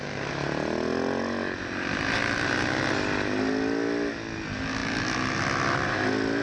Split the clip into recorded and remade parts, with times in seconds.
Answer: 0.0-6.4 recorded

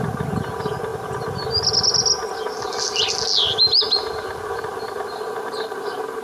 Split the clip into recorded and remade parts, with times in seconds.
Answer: 0.0-6.2 recorded

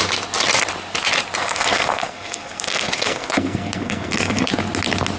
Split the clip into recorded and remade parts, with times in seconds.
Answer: 0.0-1.4 recorded; 1.4-4.5 remade; 4.5-5.2 recorded